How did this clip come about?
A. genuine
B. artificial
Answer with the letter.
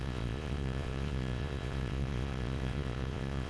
B